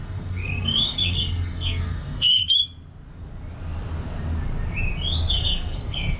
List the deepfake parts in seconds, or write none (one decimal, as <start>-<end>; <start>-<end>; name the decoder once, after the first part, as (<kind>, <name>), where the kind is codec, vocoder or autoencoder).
0.0-2.4 (codec, SNAC); 5.3-6.2